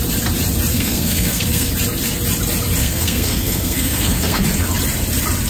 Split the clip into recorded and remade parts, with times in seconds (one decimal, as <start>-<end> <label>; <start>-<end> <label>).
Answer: 0.0-0.7 recorded; 0.7-1.7 remade; 1.7-2.8 recorded; 2.8-4.4 remade; 4.4-5.5 recorded